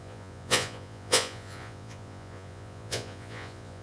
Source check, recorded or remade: remade